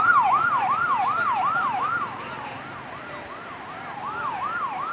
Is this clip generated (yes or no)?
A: no